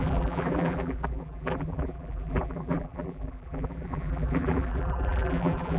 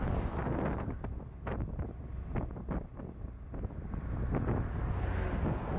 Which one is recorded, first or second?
second